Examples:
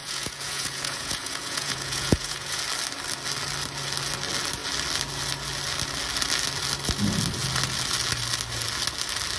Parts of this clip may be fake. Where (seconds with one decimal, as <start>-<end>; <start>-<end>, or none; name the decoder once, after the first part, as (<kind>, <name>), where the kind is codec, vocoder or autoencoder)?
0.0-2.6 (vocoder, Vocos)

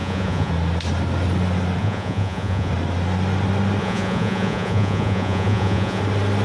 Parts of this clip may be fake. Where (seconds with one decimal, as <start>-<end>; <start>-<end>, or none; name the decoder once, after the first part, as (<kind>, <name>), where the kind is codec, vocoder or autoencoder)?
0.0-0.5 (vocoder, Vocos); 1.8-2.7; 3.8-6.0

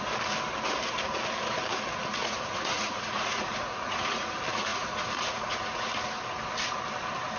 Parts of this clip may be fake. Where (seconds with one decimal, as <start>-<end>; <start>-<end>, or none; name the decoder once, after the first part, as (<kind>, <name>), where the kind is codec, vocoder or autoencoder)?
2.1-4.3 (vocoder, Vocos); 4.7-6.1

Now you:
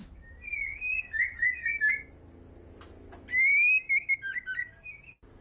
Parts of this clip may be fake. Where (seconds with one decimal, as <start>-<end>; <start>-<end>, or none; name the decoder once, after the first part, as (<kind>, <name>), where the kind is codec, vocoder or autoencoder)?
none

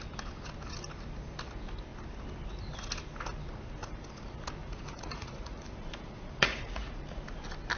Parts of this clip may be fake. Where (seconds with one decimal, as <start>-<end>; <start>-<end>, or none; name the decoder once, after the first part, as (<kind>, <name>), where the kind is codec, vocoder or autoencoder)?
4.6-7.2 (vocoder, Vocos)

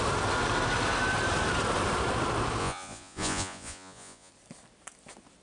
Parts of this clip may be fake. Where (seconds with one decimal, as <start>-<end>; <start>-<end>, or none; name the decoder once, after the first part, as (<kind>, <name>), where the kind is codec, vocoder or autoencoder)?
2.6-4.3 (vocoder, Vocos)

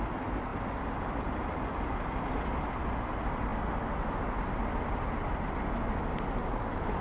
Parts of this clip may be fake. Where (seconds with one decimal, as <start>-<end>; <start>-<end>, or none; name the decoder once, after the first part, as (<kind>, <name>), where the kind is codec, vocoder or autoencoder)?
none